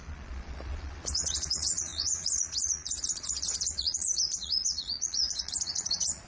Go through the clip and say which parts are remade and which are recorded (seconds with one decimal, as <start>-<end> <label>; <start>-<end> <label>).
0.0-6.3 remade